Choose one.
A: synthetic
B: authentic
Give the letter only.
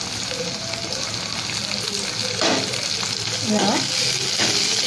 B